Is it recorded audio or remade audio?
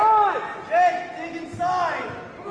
recorded